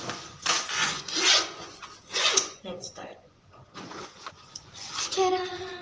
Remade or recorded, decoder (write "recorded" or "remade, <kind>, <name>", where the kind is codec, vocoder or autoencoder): remade, vocoder, Vocos